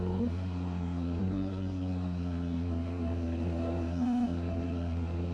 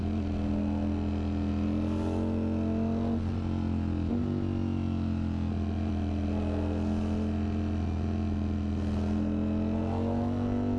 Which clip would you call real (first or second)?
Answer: second